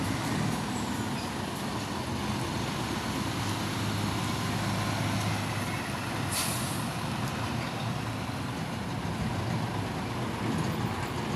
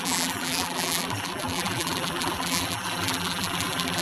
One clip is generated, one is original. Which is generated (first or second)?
second